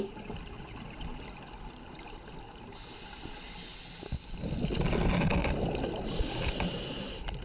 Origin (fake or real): real